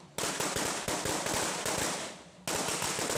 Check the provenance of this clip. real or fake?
real